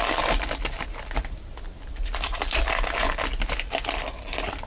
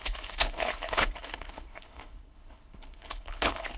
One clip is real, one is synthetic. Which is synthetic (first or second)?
second